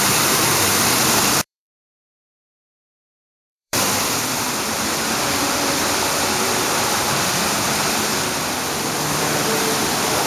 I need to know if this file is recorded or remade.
remade